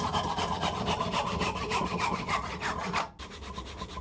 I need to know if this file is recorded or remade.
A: recorded